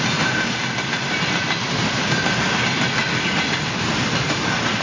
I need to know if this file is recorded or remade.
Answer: recorded